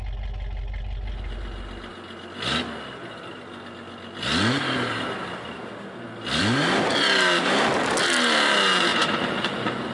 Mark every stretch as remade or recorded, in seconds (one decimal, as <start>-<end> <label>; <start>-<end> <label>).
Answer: 0.0-8.9 recorded; 8.9-9.9 remade

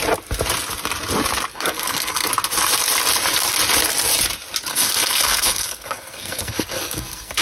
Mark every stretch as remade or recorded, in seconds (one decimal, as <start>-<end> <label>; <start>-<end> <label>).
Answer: 0.0-1.5 recorded; 1.5-2.3 remade; 2.3-4.7 recorded; 4.7-7.4 remade

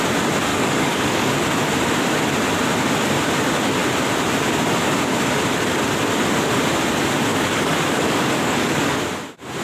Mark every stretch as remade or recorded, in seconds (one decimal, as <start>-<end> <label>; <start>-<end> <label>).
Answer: 0.0-0.5 recorded; 0.5-1.3 remade; 1.3-7.3 recorded; 7.3-9.0 remade; 9.0-9.6 recorded

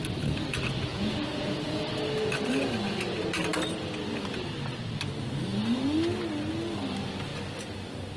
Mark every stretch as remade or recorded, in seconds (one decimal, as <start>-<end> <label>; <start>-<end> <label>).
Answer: 0.0-0.9 recorded; 0.9-1.9 remade; 1.9-8.2 recorded

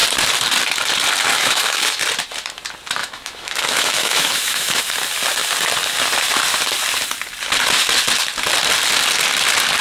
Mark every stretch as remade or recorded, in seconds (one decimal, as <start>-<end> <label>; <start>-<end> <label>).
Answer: 0.0-1.3 recorded; 1.3-2.0 remade; 2.0-3.0 recorded; 3.0-4.8 remade; 4.8-9.8 recorded

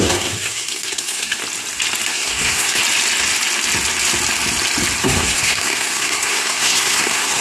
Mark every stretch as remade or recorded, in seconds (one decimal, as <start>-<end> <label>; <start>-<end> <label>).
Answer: 0.0-1.4 remade; 1.4-2.1 recorded; 2.1-2.8 remade; 2.8-5.0 recorded; 5.0-7.4 remade

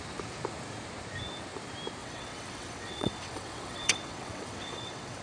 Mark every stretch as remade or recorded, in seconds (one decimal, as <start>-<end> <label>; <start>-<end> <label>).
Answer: 0.0-2.0 recorded; 2.0-5.2 remade